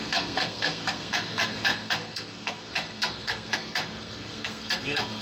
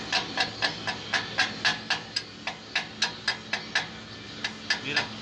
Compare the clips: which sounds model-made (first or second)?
first